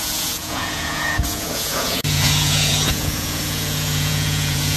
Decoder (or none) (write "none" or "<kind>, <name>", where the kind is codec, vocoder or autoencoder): vocoder, Vocos